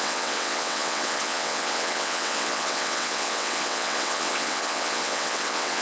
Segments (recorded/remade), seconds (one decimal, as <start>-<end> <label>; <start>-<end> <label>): 0.0-5.8 remade